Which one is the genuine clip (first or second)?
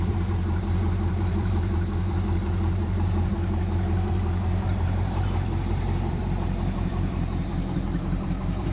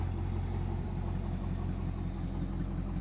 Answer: second